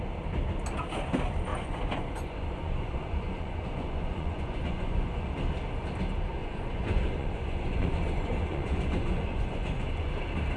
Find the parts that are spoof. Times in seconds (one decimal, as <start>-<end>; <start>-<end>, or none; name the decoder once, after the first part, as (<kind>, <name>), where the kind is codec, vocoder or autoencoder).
1.5-5.3 (vocoder, Vocos); 6.4-10.1